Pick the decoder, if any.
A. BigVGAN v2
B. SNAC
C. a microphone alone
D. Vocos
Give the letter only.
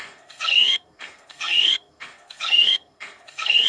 B